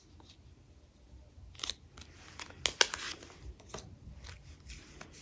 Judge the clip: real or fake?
real